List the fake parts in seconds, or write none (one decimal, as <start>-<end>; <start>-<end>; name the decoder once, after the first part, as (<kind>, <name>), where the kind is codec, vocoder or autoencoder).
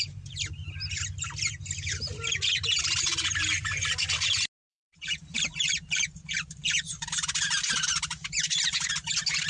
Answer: 2.8-3.9 (vocoder, BigVGAN v2); 4.7-8.9